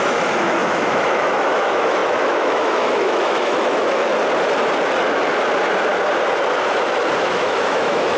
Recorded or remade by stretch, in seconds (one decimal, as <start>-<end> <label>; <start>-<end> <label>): 0.0-4.1 remade; 4.1-7.2 recorded; 7.2-8.2 remade